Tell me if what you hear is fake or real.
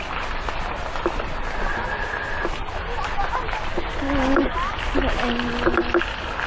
real